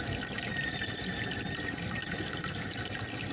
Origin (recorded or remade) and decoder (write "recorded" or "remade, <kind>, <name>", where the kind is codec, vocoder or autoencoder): recorded